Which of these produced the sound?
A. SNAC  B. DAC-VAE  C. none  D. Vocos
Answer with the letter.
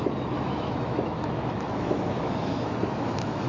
B